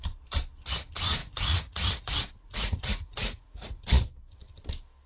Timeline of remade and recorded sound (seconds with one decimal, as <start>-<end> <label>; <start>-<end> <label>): 0.0-1.2 recorded; 1.2-3.8 remade; 3.8-5.1 recorded